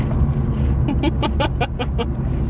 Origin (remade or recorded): recorded